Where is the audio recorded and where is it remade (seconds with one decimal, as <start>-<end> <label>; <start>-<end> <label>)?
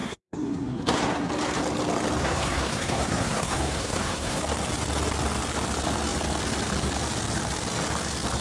0.0-1.3 remade; 1.3-2.2 recorded; 2.2-4.4 remade; 4.4-8.4 recorded